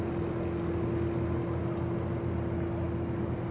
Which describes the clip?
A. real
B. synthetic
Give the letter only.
A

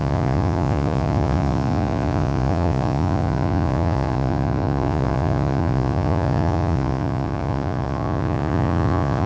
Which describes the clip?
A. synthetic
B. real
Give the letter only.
A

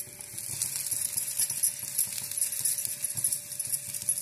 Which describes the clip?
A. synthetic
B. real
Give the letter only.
B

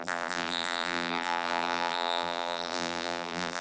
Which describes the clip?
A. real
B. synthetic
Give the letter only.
B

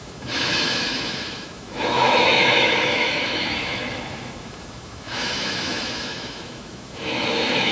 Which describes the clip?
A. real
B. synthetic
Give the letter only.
B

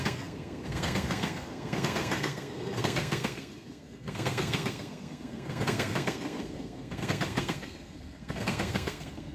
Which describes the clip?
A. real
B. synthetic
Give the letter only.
B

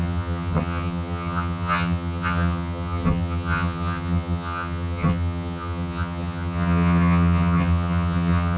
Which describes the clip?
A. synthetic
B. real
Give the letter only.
A